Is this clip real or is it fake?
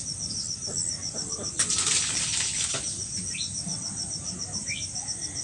real